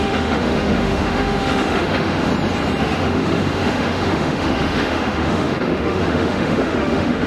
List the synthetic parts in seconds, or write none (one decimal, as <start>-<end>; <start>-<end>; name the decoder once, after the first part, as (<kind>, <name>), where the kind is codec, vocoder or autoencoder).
0.0-2.3 (autoencoder, DAC-VAE); 2.8-7.3